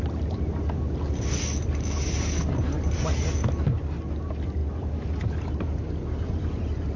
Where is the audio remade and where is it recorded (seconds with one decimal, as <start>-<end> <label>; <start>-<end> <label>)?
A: 0.0-7.0 recorded